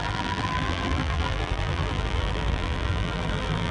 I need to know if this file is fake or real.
fake